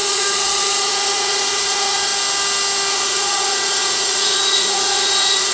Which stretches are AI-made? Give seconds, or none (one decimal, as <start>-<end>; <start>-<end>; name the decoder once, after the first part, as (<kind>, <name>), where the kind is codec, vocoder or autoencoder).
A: 0.0-2.1 (vocoder, Vocos); 2.9-5.5